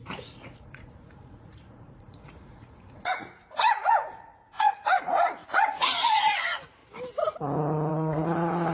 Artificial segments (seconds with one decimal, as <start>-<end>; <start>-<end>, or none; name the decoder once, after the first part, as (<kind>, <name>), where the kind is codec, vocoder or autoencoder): 0.0-6.8 (vocoder, Vocos); 7.9-8.7